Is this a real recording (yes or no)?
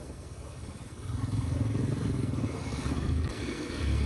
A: no